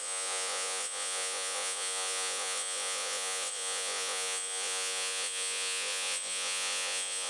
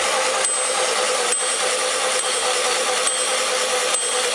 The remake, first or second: first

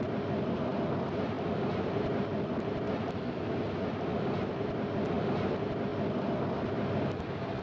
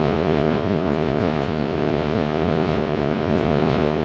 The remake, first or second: second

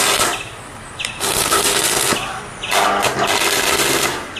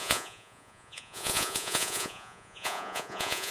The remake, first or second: second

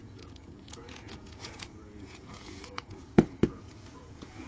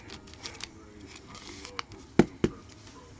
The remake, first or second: first